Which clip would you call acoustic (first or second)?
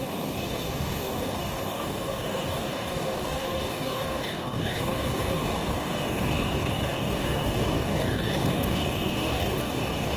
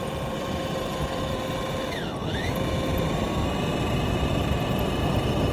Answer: second